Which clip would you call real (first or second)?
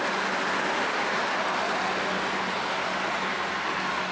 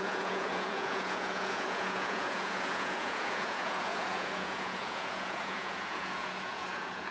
first